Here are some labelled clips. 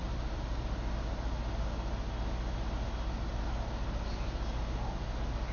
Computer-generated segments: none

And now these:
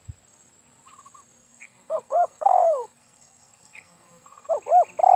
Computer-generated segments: 1.4-4.5 (codec, SNAC)

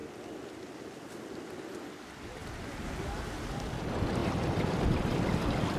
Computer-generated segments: none

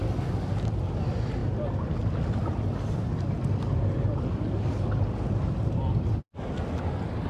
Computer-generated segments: none

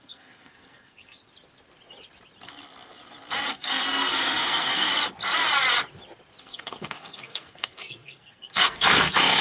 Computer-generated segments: 0.0-1.2 (codec, SNAC); 3.5-4.9; 6.4-9.4

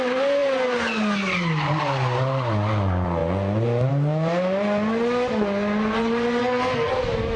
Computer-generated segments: 6.4-6.9 (codec, SNAC)